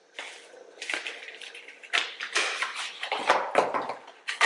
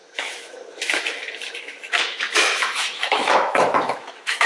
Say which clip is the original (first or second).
first